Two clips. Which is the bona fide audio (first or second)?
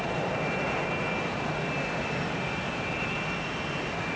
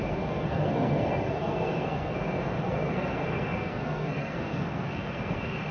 first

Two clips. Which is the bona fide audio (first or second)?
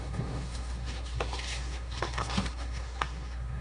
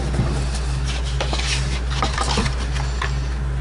second